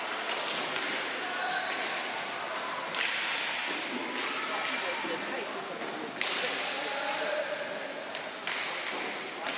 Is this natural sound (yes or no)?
yes